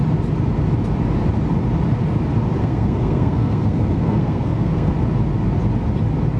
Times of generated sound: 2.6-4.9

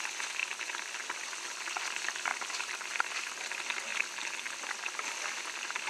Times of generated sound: none

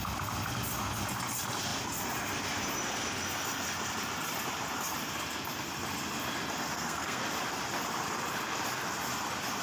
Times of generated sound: 6.7-7.2

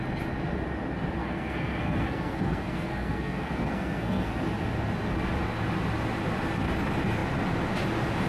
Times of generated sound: 1.2-4.3

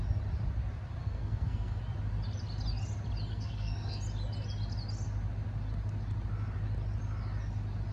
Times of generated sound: 1.0-1.8; 3.3-4.0

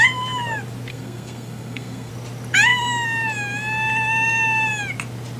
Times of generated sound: 0.9-2.1

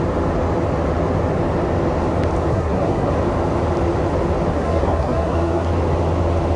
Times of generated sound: 2.5-3.1; 4.5-5.7

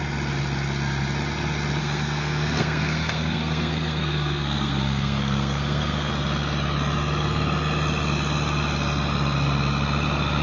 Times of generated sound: 1.8-6.1